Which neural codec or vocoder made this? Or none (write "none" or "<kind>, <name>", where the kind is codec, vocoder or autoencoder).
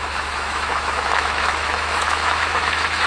autoencoder, DAC-VAE